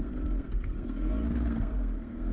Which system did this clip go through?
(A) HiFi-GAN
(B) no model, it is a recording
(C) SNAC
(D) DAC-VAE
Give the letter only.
C